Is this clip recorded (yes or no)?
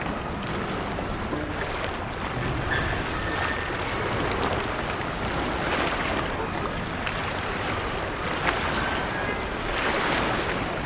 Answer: yes